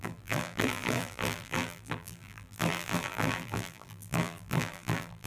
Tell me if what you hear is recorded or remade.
remade